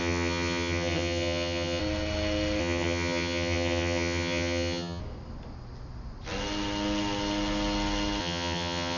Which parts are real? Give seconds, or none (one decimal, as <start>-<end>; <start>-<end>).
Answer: 1.8-2.6; 5.0-8.2